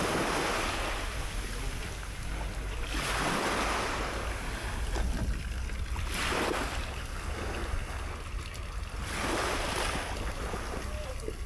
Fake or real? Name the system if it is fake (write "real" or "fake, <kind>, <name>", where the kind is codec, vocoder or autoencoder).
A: real